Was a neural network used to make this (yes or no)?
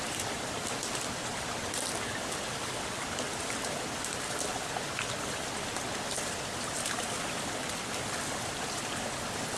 no